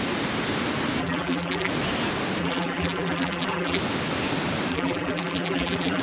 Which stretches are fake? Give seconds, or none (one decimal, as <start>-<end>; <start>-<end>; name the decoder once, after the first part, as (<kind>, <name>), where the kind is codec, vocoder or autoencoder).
1.0-1.7 (vocoder, BigVGAN v2); 2.4-3.8; 4.7-6.0